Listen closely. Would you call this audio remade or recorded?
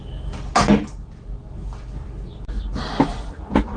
recorded